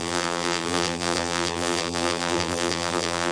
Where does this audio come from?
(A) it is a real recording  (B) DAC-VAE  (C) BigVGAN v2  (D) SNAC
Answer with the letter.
C